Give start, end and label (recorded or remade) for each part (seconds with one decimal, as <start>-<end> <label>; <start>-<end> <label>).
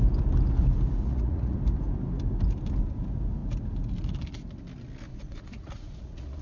0.0-1.0 recorded; 1.0-1.6 remade; 1.6-5.1 recorded; 5.1-6.4 remade